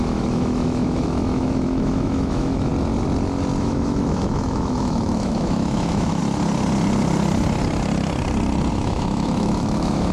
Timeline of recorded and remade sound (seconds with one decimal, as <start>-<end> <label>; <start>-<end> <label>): 0.0-2.7 remade; 2.7-3.6 recorded; 3.6-6.2 remade; 6.2-8.7 recorded; 8.7-10.1 remade